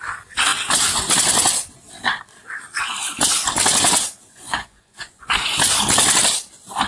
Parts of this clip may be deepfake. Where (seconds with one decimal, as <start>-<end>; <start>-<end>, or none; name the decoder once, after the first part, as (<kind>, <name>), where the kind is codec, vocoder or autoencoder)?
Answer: 4.2-5.3 (vocoder, Vocos)

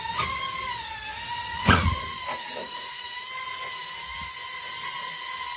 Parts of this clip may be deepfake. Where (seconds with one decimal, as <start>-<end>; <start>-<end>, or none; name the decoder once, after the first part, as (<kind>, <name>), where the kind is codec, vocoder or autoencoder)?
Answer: 1.5-2.0 (vocoder, Vocos); 2.6-3.1

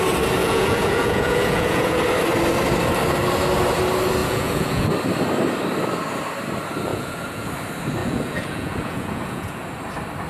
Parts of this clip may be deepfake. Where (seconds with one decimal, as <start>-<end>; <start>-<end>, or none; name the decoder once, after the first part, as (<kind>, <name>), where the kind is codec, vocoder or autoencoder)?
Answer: 0.4-2.0 (vocoder, Vocos); 4.2-4.9; 6.9-7.5; 8.0-9.6

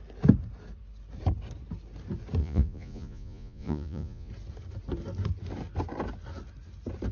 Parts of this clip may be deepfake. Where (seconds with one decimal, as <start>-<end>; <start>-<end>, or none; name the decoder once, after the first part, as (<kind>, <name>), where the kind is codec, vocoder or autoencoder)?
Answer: 2.4-4.3 (vocoder, Vocos)

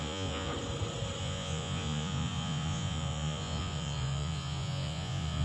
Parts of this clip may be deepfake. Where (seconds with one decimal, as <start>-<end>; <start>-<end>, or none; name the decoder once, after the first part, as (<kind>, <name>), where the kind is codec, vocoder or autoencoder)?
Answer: 0.0-0.5 (vocoder, Vocos); 1.2-5.4

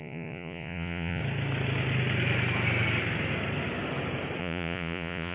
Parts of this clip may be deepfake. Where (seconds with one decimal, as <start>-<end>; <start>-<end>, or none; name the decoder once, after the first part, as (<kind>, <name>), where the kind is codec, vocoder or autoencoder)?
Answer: 0.0-1.2 (vocoder, Vocos); 4.4-5.3